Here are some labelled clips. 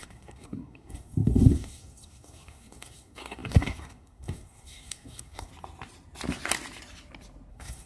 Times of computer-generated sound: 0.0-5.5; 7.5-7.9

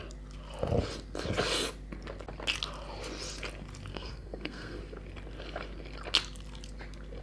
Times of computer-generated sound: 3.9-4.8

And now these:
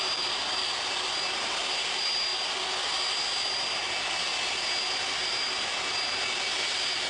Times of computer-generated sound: none

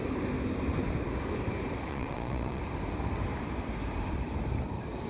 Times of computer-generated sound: 1.9-2.6